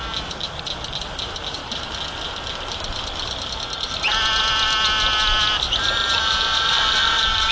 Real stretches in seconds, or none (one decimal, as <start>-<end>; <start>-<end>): 0.0-7.5